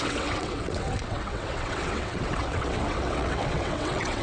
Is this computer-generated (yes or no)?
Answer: yes